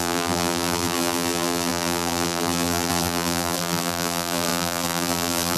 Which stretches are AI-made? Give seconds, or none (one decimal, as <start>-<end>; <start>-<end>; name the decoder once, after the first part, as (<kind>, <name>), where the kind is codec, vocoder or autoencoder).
0.0-5.6 (vocoder, BigVGAN v2)